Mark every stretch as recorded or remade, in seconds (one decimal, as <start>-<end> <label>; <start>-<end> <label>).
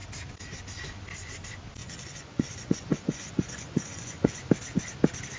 0.0-1.8 recorded; 1.8-4.4 remade; 4.4-5.4 recorded